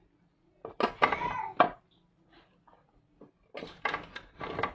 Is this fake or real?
real